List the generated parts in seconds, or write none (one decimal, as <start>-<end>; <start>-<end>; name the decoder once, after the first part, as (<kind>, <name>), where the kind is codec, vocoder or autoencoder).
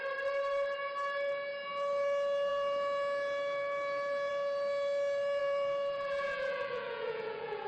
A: 5.4-7.7 (vocoder, Vocos)